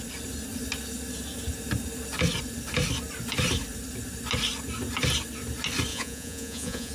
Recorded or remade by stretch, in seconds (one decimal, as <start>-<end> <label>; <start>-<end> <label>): 0.0-5.9 recorded; 5.9-6.9 remade